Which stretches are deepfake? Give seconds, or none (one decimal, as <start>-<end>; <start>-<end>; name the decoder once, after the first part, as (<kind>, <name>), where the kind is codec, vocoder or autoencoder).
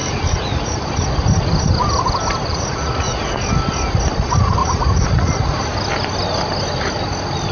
0.0-0.9 (vocoder, Vocos); 2.5-3.2; 4.6-5.7